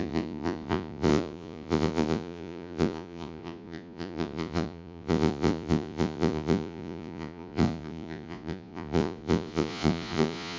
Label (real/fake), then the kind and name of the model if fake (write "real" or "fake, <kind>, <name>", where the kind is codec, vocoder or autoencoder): fake, vocoder, Vocos